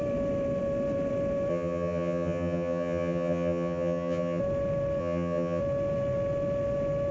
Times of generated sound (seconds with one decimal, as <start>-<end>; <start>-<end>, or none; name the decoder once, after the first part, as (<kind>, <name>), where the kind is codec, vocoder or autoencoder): 1.5-4.4 (vocoder, HiFi-GAN); 5.0-5.6